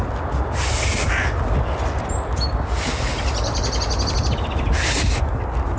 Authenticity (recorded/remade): recorded